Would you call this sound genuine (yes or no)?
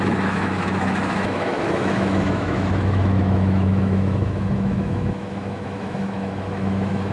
no